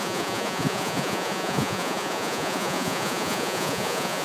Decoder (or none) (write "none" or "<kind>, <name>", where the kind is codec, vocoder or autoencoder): vocoder, Vocos